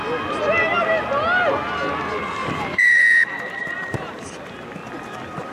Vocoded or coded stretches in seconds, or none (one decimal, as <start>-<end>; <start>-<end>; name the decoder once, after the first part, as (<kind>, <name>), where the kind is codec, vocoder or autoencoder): 2.4-4.3 (vocoder, BigVGAN v2)